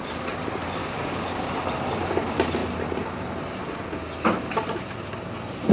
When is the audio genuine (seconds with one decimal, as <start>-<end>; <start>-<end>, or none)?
0.0-0.8; 1.5-5.7